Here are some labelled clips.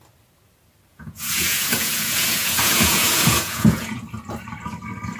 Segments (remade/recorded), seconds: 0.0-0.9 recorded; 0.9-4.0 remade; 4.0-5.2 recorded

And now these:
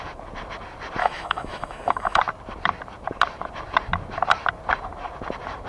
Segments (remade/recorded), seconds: 0.0-1.0 recorded; 1.0-2.2 remade; 2.2-5.7 recorded

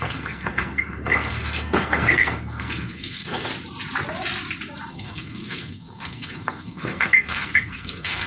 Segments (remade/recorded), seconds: 0.0-3.5 remade; 3.5-4.9 recorded; 4.9-8.3 remade

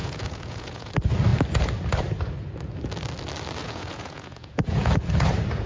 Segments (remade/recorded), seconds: 0.0-0.9 remade; 0.9-3.6 recorded; 3.6-5.1 remade; 5.1-5.7 recorded

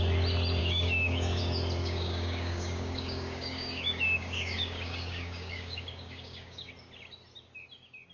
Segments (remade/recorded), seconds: 0.0-0.6 recorded; 0.6-1.4 remade; 1.4-1.8 recorded; 1.8-6.7 remade; 6.7-8.1 recorded

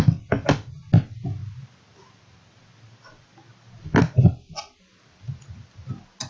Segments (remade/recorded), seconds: 0.0-6.3 recorded